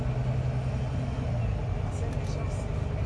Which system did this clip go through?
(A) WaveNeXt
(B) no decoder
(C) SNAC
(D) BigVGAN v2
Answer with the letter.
B